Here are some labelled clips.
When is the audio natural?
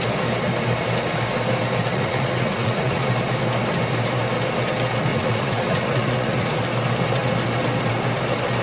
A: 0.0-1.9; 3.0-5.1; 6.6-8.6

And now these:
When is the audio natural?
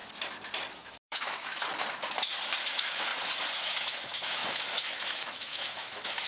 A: 0.0-0.7; 1.6-2.6; 3.1-3.6